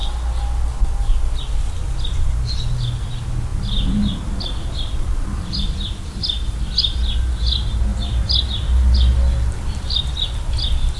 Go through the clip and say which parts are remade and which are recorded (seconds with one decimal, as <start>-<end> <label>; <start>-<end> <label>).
0.0-11.0 recorded